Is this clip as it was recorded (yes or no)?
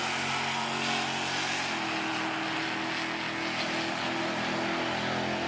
yes